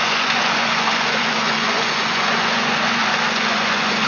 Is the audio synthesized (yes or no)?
yes